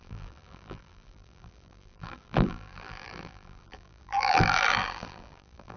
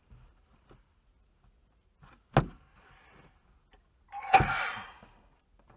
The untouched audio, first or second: second